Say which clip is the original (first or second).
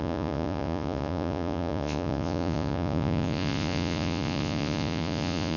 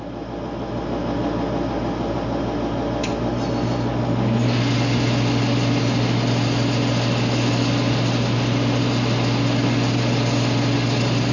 second